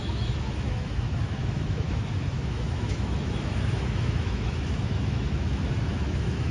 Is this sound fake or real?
fake